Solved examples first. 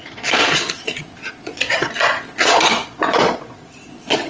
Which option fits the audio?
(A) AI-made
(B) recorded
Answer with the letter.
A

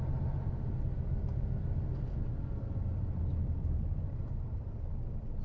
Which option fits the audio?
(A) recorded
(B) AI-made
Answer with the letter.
A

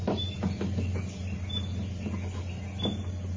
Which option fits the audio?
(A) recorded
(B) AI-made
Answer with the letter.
A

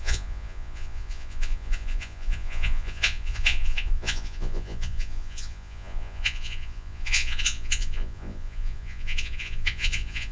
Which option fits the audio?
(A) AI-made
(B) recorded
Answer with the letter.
A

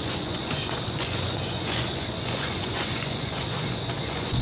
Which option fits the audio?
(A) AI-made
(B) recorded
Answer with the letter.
A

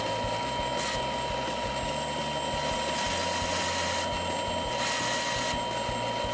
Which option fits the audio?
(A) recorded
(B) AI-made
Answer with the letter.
A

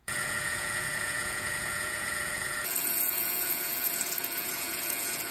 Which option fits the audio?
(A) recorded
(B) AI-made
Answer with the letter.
B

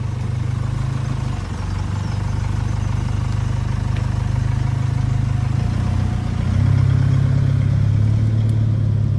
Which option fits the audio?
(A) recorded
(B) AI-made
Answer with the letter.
A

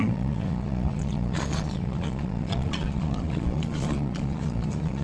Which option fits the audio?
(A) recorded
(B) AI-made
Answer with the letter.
B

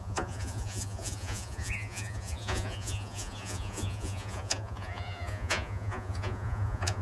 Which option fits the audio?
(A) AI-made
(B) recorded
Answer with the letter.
A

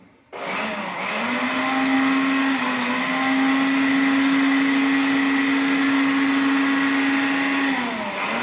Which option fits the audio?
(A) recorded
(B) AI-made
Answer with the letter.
A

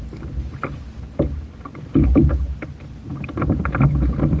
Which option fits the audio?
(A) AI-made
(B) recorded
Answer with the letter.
B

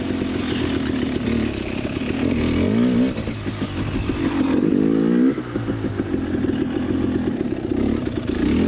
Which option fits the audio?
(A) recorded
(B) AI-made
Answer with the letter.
A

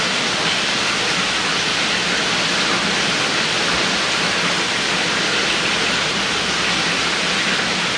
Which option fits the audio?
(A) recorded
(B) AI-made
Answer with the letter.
A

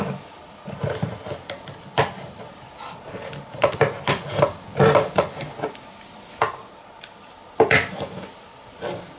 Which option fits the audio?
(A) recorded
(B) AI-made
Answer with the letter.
A